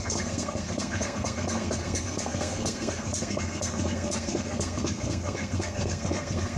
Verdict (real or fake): fake